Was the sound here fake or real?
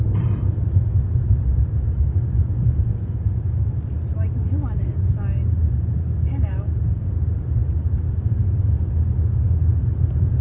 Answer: real